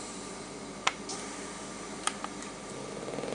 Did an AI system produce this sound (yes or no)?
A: no